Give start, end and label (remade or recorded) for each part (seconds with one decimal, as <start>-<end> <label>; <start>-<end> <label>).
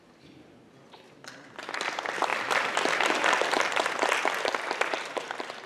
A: 0.0-5.7 recorded